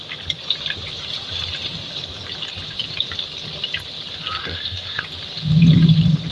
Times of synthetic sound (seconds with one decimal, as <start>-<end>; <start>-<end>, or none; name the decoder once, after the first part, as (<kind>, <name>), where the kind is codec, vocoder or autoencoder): 4.4-5.0 (codec, SNAC)